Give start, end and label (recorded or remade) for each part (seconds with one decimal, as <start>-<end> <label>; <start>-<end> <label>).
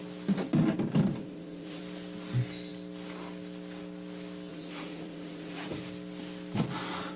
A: 0.0-1.2 recorded; 1.2-1.8 remade; 1.8-4.5 recorded; 4.5-5.8 remade; 5.8-7.2 recorded